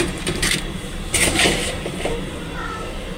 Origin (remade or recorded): remade